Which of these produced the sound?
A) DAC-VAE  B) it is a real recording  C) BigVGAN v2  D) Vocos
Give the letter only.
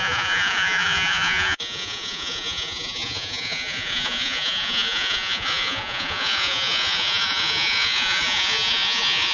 D